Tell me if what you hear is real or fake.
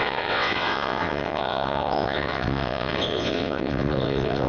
fake